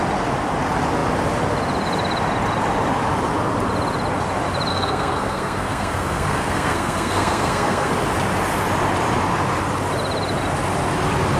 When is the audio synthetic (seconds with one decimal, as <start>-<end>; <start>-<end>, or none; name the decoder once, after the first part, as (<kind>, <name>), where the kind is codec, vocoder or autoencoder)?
4.7-7.9 (codec, SNAC)

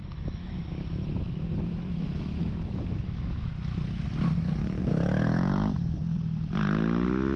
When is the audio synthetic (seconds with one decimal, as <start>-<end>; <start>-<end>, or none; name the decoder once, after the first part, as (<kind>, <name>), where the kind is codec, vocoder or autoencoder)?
0.0-3.4 (autoencoder, DAC-VAE); 4.8-5.8